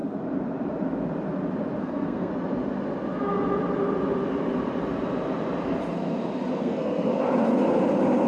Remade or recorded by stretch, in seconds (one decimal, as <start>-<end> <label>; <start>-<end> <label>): 0.0-1.8 recorded; 1.8-2.3 remade; 2.3-6.6 recorded; 6.6-7.1 remade; 7.1-8.3 recorded